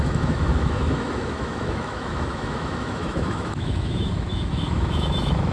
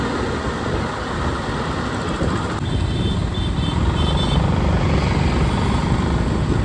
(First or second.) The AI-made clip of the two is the first